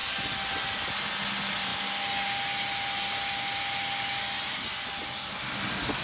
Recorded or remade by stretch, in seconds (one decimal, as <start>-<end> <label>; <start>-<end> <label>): 0.0-6.0 recorded